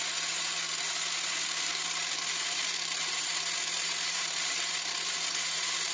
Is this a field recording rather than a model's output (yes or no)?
no